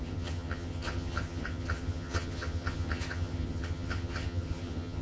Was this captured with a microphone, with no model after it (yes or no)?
no